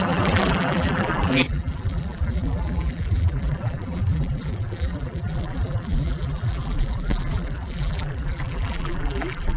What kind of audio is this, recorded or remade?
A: remade